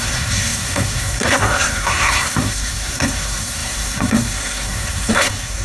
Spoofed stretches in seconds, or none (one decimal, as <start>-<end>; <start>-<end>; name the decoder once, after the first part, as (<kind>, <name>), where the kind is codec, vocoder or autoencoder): 0.0-5.6 (codec, SNAC)